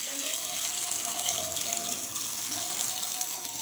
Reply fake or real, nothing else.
fake